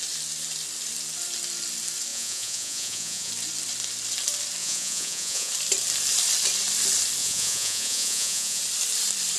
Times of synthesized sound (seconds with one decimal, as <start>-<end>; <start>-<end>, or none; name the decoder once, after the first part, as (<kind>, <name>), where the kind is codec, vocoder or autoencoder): 2.1-3.3 (vocoder, Vocos); 4.6-5.5; 7.2-8.6